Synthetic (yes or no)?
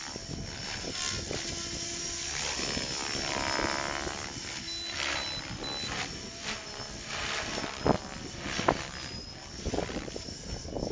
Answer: no